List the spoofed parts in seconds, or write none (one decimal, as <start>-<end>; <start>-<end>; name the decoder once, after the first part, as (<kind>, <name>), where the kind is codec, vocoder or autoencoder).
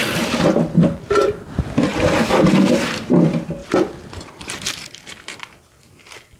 0.0-0.9 (vocoder, BigVGAN v2); 3.6-5.4